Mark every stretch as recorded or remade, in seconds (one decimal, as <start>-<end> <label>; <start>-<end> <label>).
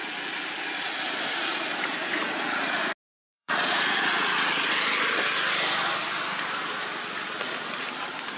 0.0-2.0 recorded; 2.0-2.8 remade; 2.8-3.3 recorded; 3.3-4.5 remade; 4.5-8.4 recorded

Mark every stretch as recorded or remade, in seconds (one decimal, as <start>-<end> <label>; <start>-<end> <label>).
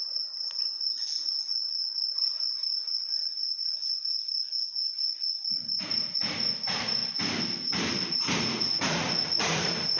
0.0-3.2 remade; 3.2-5.8 recorded; 5.8-7.0 remade; 7.0-8.4 recorded; 8.4-10.0 remade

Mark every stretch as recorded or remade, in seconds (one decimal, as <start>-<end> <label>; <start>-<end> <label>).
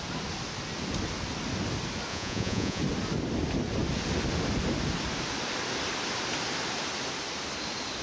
0.0-2.1 recorded; 2.1-2.8 remade; 2.8-8.0 recorded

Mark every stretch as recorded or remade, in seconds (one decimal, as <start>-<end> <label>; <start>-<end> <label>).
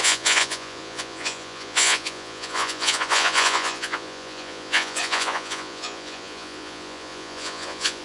0.0-8.0 remade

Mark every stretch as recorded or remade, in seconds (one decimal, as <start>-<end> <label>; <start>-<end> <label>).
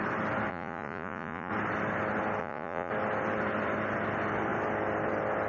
0.0-0.5 recorded; 0.5-1.5 remade; 1.5-2.4 recorded; 2.4-2.9 remade; 2.9-5.5 recorded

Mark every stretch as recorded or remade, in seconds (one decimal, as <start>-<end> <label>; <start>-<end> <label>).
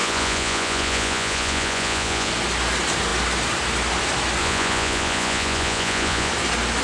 0.0-2.3 remade; 2.3-4.4 recorded; 4.4-6.3 remade; 6.3-6.8 recorded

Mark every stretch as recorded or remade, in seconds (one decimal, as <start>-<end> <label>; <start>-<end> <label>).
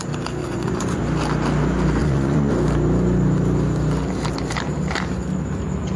0.0-0.4 recorded; 0.4-1.0 remade; 1.0-2.0 recorded; 2.0-2.5 remade; 2.5-6.0 recorded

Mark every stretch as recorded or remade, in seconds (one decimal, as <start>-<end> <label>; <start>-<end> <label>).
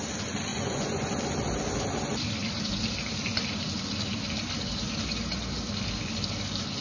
0.0-0.5 recorded; 0.5-1.1 remade; 1.1-6.8 recorded